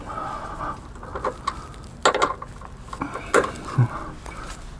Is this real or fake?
real